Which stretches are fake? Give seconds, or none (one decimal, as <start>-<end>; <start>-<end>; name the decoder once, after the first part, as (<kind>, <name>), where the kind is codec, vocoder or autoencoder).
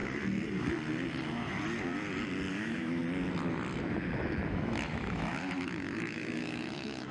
2.5-3.0 (autoencoder, DAC-VAE); 3.9-7.1